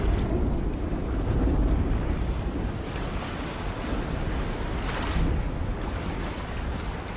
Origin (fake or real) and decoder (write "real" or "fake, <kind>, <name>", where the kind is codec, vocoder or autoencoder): real